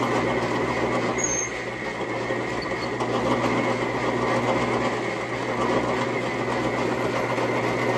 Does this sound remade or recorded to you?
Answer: recorded